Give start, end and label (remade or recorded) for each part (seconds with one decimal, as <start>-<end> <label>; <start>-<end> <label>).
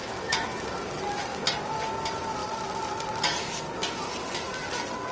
0.0-5.1 recorded